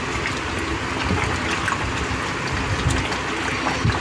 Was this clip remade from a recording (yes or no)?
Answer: no